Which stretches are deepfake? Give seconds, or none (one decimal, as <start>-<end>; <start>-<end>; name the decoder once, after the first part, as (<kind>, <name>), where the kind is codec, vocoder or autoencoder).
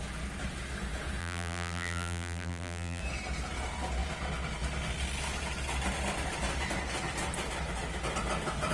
1.2-3.0 (vocoder, BigVGAN v2)